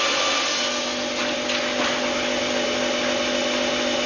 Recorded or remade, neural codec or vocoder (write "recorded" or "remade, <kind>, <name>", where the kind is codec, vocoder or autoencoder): recorded